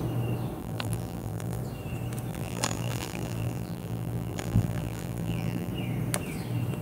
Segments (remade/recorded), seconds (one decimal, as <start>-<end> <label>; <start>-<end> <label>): 0.0-0.6 recorded; 0.6-1.6 remade; 1.6-2.3 recorded; 2.3-5.7 remade; 5.7-6.8 recorded